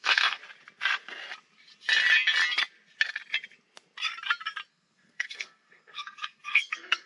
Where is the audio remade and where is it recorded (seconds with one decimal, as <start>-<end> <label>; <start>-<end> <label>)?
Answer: 0.0-0.4 remade; 0.4-4.7 recorded; 4.7-7.1 remade